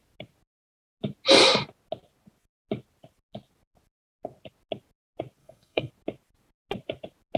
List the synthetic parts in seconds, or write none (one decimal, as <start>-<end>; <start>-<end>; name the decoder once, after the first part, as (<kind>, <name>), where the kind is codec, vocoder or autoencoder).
5.4-5.9 (codec, SNAC)